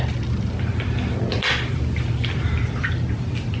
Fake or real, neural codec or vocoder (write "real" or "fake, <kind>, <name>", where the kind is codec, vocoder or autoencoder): real